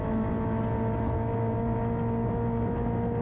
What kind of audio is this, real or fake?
real